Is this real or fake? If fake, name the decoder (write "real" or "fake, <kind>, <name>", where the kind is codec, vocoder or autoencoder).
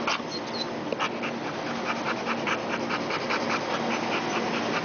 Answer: real